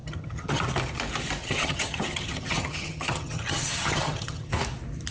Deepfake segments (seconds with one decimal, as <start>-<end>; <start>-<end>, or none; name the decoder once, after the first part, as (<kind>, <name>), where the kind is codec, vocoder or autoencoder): 0.0-0.6 (vocoder, HiFi-GAN); 1.4-4.5